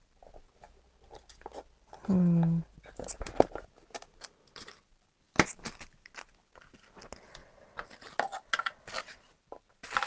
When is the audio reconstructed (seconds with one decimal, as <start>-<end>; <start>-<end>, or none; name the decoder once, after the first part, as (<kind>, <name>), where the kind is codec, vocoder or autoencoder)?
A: none